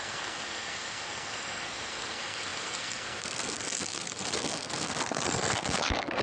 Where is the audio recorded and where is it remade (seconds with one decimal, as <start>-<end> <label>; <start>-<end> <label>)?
0.0-6.2 remade